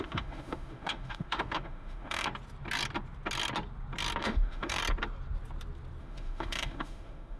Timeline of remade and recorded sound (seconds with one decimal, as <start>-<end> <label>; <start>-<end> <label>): 0.0-2.3 remade; 2.3-4.2 recorded; 4.2-4.8 remade; 4.8-6.0 recorded; 6.0-7.4 remade